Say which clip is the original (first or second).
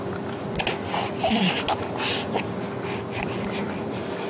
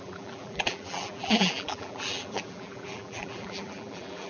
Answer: first